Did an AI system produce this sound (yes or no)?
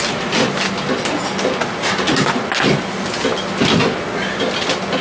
no